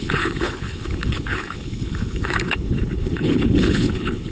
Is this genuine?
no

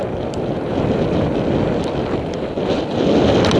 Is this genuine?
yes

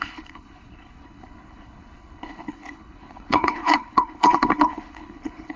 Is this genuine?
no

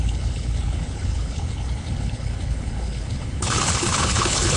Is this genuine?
no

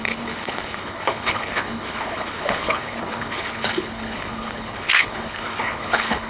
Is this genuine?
no